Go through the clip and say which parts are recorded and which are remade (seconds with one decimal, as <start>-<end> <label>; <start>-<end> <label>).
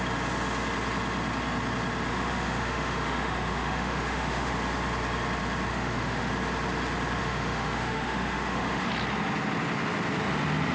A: 0.0-2.1 recorded; 2.1-4.5 remade; 4.5-5.7 recorded; 5.7-6.3 remade; 6.3-7.2 recorded; 7.2-8.9 remade; 8.9-10.7 recorded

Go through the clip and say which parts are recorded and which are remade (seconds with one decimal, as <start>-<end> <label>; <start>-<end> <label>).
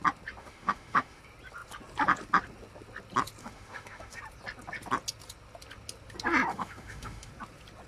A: 0.0-0.4 recorded; 0.4-1.2 remade; 1.2-3.4 recorded; 3.4-4.2 remade; 4.2-6.5 recorded; 6.5-7.3 remade; 7.3-7.9 recorded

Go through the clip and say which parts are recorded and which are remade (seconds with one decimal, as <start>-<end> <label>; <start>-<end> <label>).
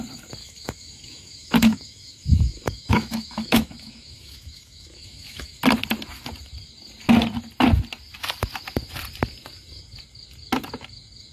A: 0.0-0.4 recorded; 0.4-5.6 remade; 5.6-11.3 recorded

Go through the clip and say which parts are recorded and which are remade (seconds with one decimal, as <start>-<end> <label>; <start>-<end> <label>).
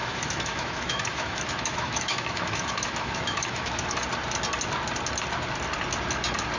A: 0.0-4.0 remade; 4.0-6.6 recorded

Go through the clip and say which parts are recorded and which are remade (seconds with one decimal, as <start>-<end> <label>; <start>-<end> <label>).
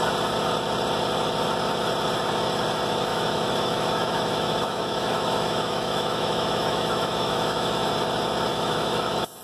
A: 0.0-3.1 recorded; 3.1-7.9 remade; 7.9-8.5 recorded; 8.5-9.4 remade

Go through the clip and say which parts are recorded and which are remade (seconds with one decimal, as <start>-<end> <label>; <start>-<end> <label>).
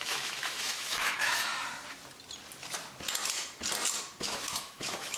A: 0.0-1.5 remade; 1.5-4.2 recorded; 4.2-5.2 remade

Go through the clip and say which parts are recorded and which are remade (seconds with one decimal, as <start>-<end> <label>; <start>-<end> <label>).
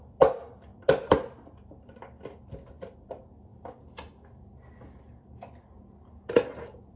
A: 0.0-7.0 recorded